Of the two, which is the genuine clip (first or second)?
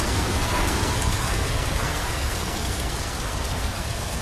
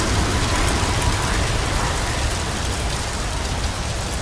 second